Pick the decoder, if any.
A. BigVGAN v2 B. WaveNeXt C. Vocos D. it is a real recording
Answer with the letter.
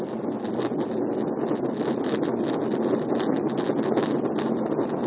D